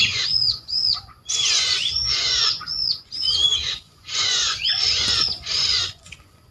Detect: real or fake fake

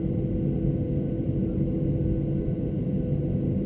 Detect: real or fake real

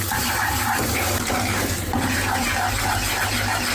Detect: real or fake fake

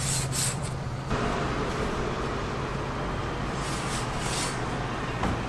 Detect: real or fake real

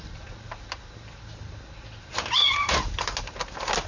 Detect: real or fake real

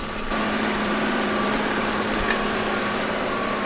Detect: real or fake fake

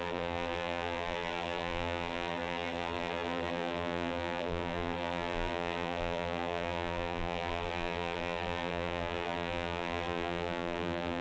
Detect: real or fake fake